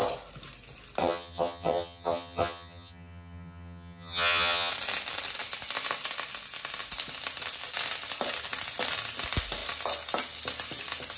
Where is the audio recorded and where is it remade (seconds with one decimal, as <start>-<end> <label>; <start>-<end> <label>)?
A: 0.0-1.0 recorded; 1.0-4.7 remade; 4.7-11.2 recorded